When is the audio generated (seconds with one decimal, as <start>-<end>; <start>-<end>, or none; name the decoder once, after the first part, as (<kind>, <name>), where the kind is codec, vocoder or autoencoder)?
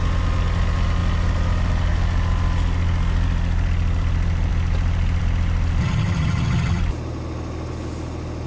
5.8-6.8 (vocoder, HiFi-GAN)